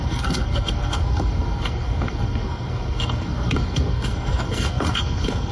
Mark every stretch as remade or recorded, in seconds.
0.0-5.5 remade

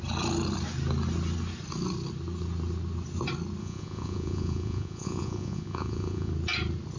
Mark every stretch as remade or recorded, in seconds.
0.0-3.6 recorded; 3.6-6.3 remade; 6.3-7.0 recorded

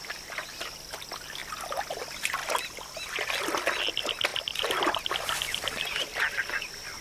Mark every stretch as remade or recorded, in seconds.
0.0-2.4 recorded; 2.4-3.3 remade; 3.3-4.3 recorded; 4.3-5.1 remade; 5.1-7.0 recorded

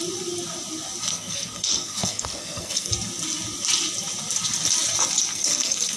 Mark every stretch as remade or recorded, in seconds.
0.0-1.1 recorded; 1.1-2.9 remade; 2.9-5.3 recorded; 5.3-6.0 remade

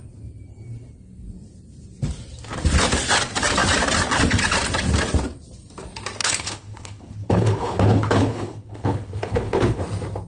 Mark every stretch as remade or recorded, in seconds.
0.0-6.2 recorded; 6.2-9.8 remade; 9.8-10.3 recorded